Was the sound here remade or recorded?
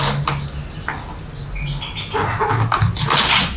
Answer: recorded